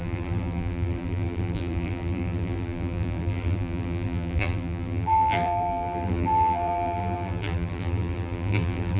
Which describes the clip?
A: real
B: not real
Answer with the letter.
B